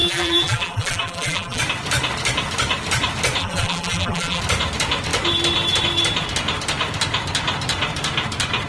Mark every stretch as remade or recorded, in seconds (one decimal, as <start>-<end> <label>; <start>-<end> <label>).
0.0-1.6 remade; 1.6-3.4 recorded; 3.4-4.4 remade; 4.4-8.7 recorded